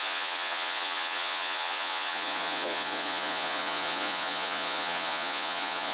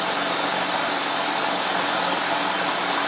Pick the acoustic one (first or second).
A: second